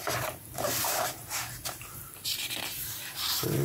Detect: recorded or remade remade